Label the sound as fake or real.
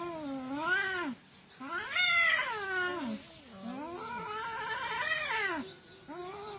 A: real